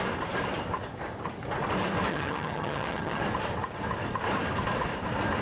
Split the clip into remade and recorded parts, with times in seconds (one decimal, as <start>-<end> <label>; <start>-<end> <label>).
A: 0.0-2.1 recorded; 2.1-3.2 remade; 3.2-5.4 recorded